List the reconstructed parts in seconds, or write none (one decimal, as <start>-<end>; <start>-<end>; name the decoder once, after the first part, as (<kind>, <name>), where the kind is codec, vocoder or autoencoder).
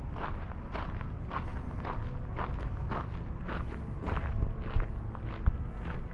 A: none